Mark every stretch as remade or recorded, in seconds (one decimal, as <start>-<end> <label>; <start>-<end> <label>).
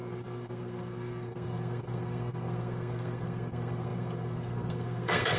0.0-5.4 remade